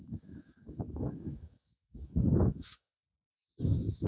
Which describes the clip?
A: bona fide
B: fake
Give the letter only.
B